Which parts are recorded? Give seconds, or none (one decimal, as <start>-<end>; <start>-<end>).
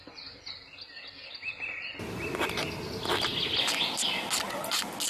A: 0.0-5.1